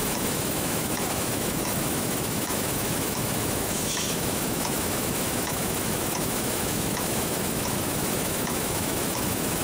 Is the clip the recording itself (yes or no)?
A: no